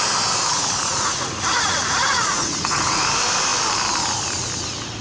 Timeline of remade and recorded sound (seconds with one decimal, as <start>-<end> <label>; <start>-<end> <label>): 0.0-0.5 recorded; 0.5-3.1 remade; 3.1-5.0 recorded